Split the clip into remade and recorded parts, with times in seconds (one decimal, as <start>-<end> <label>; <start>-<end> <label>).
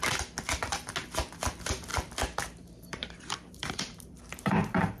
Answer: 0.0-1.9 recorded; 1.9-5.0 remade